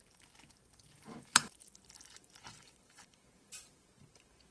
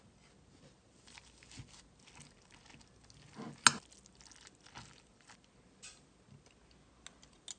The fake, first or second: first